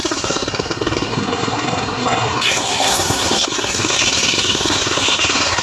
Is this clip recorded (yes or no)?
no